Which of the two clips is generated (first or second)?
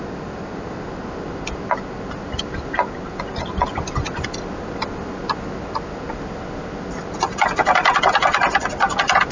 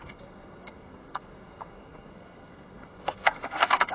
second